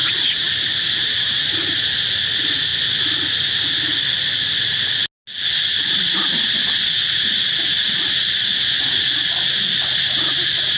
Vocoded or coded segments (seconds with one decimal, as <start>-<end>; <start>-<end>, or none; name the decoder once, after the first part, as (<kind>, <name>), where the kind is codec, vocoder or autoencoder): 0.0-2.1 (vocoder, BigVGAN v2)